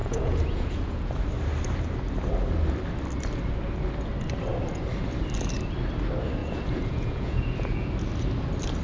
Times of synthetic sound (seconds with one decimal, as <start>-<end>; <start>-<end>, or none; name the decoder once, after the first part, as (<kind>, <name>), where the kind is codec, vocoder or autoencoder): 0.0-1.1 (vocoder, Vocos); 6.4-7.9